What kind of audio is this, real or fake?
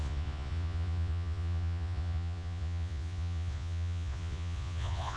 fake